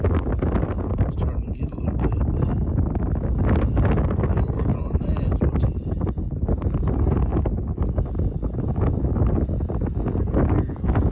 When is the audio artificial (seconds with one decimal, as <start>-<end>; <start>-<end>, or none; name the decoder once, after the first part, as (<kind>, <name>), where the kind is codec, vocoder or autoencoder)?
none